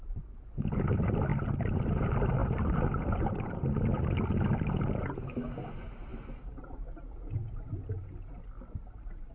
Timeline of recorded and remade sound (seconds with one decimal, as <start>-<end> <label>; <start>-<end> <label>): 0.0-9.3 recorded